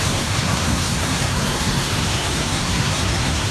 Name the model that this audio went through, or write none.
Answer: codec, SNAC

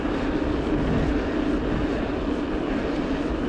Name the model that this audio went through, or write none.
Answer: none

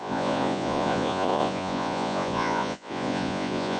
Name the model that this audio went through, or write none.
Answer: vocoder, Vocos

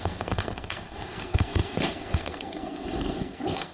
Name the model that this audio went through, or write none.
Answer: codec, SNAC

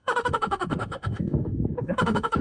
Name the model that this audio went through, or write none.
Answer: autoencoder, DAC-VAE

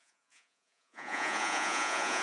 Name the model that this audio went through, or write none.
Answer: vocoder, Vocos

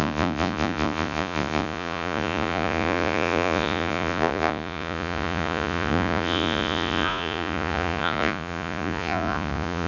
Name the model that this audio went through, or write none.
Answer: vocoder, Vocos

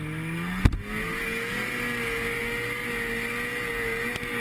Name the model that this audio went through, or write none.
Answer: none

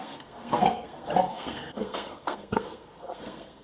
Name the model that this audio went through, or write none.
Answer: codec, SNAC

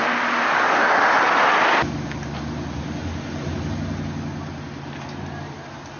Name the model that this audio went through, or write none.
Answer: none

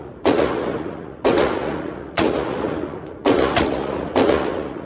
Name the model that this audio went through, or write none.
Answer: vocoder, Vocos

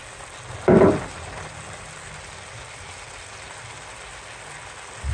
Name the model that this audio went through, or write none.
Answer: none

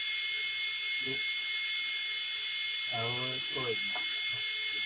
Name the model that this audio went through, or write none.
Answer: none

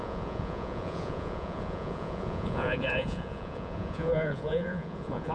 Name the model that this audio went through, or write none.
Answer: vocoder, Vocos